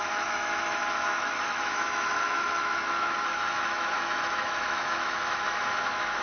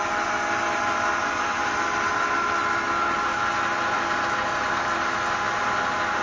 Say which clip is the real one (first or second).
second